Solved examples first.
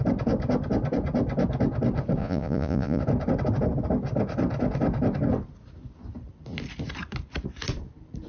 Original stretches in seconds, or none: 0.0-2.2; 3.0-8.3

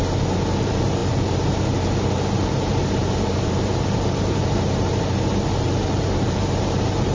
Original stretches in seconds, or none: 0.0-0.6

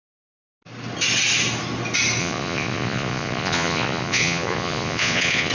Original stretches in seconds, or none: 0.0-2.2

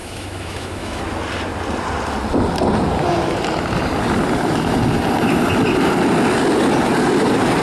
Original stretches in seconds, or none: 1.0-7.6

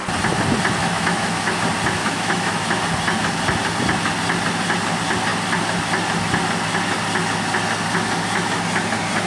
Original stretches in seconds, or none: 0.0-0.8; 1.5-2.0; 2.8-9.3

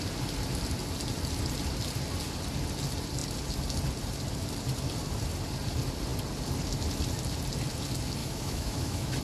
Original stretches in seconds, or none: 0.0-8.2

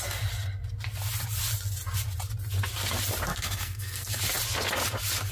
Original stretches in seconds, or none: 0.0-3.3; 4.2-5.3